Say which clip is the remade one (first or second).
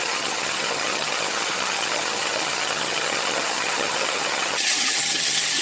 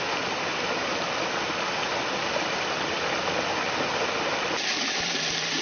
first